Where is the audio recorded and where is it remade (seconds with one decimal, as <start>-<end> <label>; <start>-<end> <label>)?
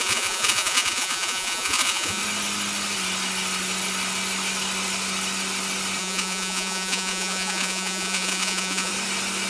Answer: 0.0-2.2 remade; 2.2-6.0 recorded; 6.0-8.9 remade; 8.9-9.5 recorded